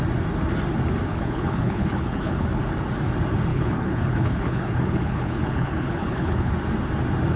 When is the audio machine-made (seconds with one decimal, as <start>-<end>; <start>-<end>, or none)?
1.1-2.6; 3.5-6.5